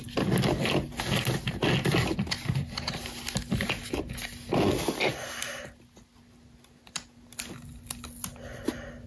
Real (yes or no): yes